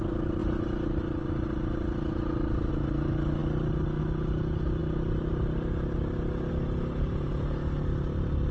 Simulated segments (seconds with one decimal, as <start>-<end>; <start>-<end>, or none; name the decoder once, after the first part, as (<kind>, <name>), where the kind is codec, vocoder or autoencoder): none